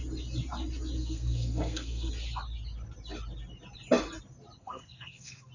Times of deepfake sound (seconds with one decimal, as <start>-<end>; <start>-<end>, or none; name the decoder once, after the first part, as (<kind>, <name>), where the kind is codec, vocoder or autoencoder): 1.0-2.1 (codec, SNAC); 4.6-5.5